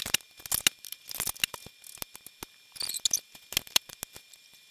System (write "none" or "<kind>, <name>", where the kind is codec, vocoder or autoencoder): none